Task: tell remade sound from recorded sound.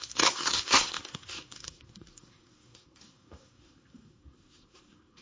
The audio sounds remade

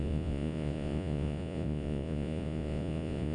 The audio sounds remade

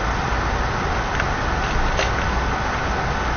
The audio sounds recorded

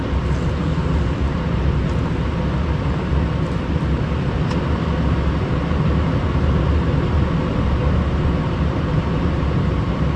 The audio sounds recorded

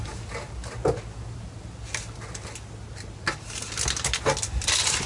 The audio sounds recorded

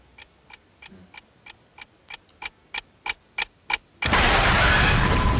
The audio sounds recorded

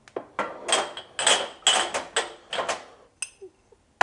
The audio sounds recorded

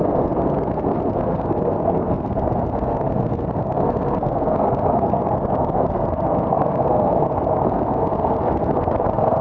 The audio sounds remade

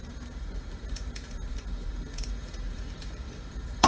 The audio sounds remade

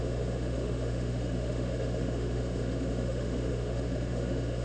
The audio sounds remade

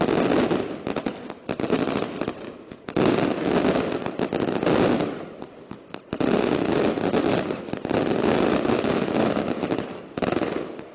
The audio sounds recorded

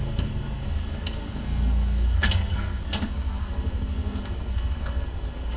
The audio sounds remade